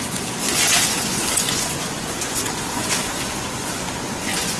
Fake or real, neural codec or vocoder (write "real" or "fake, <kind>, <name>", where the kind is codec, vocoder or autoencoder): fake, vocoder, Vocos